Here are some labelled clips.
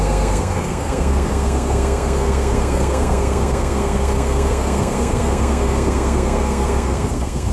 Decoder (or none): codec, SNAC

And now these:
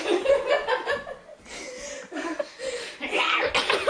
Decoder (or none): none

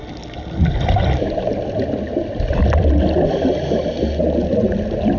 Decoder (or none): none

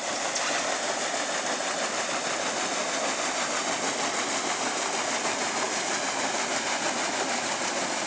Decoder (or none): none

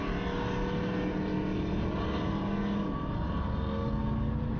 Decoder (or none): none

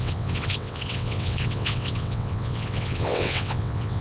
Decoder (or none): vocoder, WaveNeXt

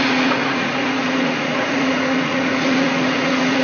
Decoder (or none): vocoder, Vocos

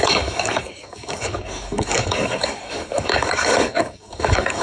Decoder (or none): codec, DAC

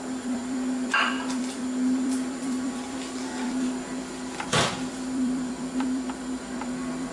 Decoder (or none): vocoder, BigVGAN v2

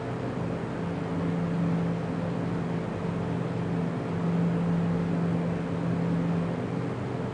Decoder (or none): none